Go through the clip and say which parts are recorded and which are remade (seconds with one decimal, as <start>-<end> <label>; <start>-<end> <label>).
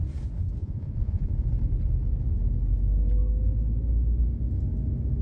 0.0-0.6 recorded; 0.6-1.3 remade; 1.3-5.2 recorded